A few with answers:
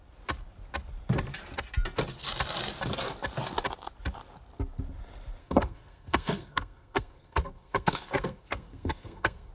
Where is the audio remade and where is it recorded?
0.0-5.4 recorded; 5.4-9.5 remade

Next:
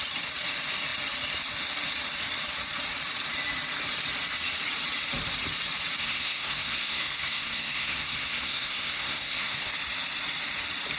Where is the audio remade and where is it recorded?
0.0-6.0 recorded; 6.0-9.7 remade; 9.7-11.0 recorded

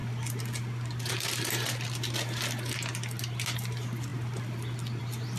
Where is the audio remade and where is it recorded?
0.0-5.4 recorded